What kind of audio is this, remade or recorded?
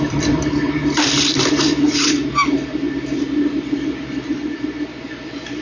remade